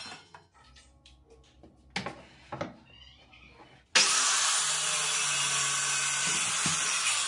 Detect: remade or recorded recorded